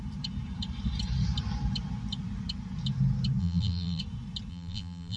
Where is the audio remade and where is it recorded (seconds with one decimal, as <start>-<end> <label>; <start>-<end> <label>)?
0.0-3.4 recorded; 3.4-4.0 remade; 4.0-4.5 recorded; 4.5-5.2 remade